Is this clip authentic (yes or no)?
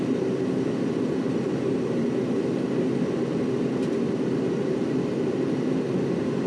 yes